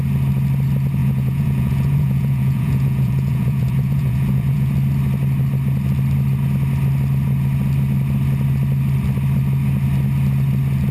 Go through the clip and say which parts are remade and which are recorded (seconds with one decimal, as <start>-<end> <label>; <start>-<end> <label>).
0.0-1.0 recorded; 1.0-4.7 remade; 4.7-10.9 recorded